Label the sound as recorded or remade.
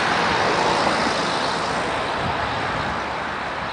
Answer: recorded